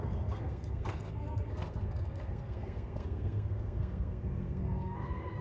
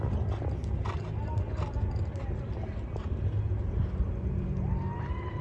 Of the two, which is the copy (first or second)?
first